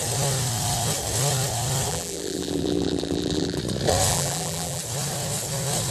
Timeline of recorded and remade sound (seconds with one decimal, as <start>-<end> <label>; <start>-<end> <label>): 0.0-1.9 recorded; 1.9-3.6 remade; 3.6-4.1 recorded; 4.1-4.8 remade; 4.8-5.9 recorded